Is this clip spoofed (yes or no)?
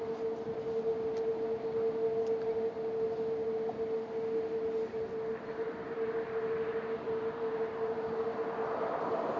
no